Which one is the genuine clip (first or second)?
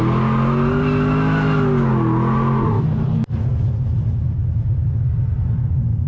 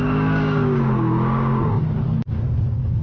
first